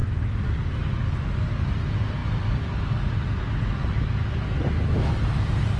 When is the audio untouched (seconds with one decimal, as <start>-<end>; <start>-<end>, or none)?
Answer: 0.0-5.8